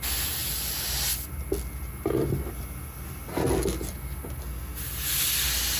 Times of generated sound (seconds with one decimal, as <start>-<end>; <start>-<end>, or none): none